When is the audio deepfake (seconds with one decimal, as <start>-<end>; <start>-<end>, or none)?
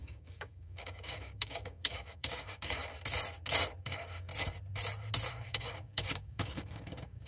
0.0-2.8; 3.8-4.3; 5.3-7.3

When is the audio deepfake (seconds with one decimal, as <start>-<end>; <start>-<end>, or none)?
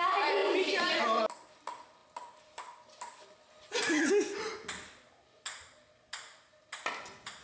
none